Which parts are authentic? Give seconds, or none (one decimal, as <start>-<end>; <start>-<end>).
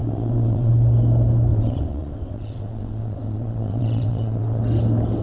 0.7-1.5; 4.6-5.2